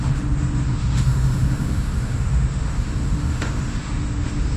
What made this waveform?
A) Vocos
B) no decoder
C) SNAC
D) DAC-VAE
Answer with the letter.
D